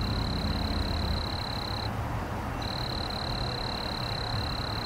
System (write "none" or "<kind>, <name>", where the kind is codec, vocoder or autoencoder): none